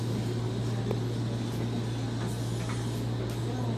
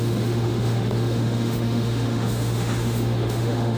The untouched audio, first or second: first